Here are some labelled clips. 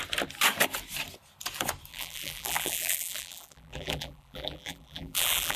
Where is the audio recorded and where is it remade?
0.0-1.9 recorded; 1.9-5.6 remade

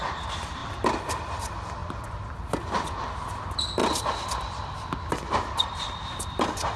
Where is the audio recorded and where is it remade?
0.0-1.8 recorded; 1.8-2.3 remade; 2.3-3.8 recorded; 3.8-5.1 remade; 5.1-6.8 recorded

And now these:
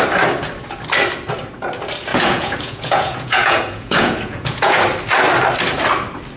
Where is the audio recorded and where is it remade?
0.0-2.1 recorded; 2.1-4.8 remade; 4.8-6.4 recorded

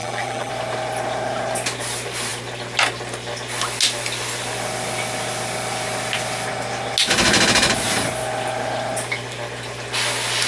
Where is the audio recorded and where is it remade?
0.0-0.5 remade; 0.5-10.5 recorded